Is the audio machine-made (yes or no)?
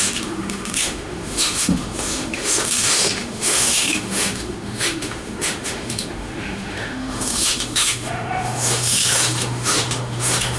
yes